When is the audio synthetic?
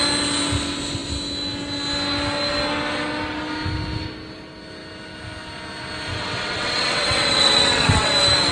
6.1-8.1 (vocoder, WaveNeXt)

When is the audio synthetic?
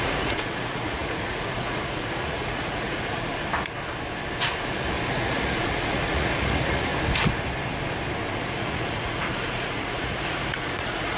0.0-3.3 (vocoder, Vocos); 5.1-6.9; 8.4-11.2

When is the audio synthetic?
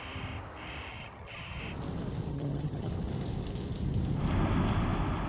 0.9-1.6 (vocoder, HiFi-GAN); 2.3-2.9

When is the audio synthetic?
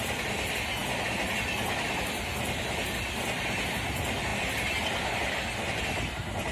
none